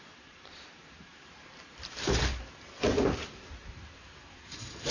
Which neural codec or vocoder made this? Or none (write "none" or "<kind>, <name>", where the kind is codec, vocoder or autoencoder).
vocoder, BigVGAN v2